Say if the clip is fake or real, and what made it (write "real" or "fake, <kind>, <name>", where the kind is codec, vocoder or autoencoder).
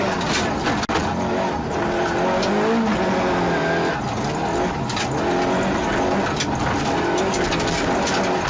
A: real